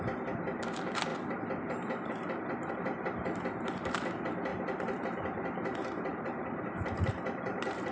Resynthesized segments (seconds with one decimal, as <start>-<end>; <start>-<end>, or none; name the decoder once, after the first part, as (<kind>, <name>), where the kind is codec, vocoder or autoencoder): 1.1-2.7 (vocoder, BigVGAN v2); 6.1-7.9